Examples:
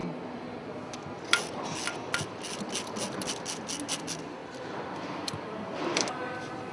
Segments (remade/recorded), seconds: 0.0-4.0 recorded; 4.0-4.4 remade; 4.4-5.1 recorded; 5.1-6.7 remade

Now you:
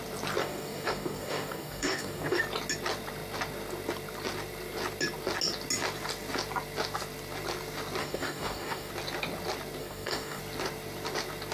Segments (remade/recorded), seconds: 0.0-0.4 recorded; 0.4-2.4 remade; 2.4-8.0 recorded; 8.0-8.9 remade; 8.9-9.8 recorded; 9.8-10.4 remade; 10.4-11.5 recorded

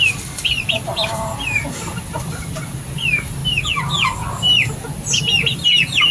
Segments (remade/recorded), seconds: 0.0-6.1 recorded

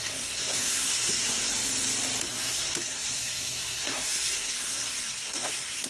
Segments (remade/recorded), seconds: 0.0-1.4 remade; 1.4-2.2 recorded; 2.2-5.9 remade

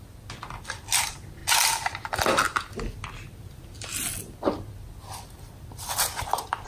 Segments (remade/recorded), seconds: 0.0-6.7 recorded

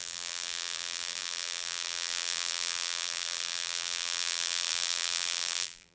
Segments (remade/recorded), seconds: 0.0-5.9 remade